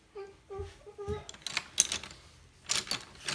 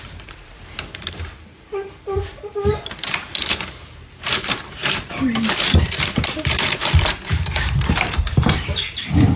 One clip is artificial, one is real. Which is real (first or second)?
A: first